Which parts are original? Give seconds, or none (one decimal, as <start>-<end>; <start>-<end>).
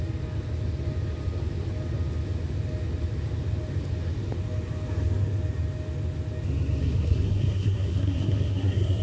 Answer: 0.0-6.8